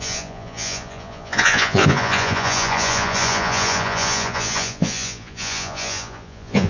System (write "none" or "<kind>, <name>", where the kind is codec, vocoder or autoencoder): vocoder, Vocos